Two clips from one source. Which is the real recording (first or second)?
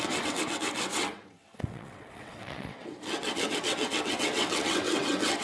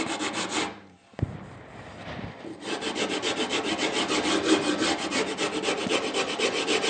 second